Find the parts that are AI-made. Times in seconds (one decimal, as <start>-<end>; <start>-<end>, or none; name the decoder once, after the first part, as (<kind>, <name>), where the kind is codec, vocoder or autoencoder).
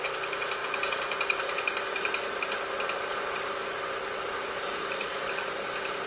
none